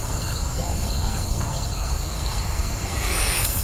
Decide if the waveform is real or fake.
fake